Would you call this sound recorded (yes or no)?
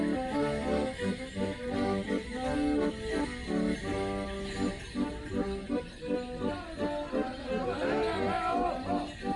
yes